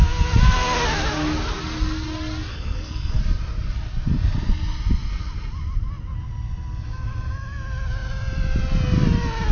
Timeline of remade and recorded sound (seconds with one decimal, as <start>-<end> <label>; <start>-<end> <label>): 0.0-2.5 recorded; 2.5-3.2 remade; 3.2-9.5 recorded